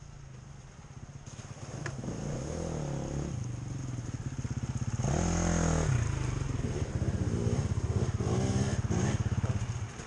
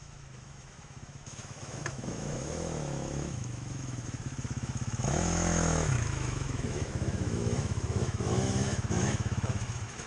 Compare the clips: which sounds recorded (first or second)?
first